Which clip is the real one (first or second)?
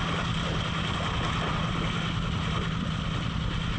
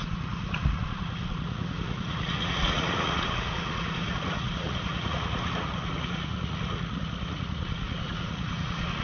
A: first